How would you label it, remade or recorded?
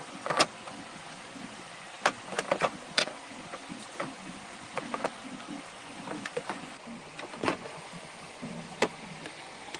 remade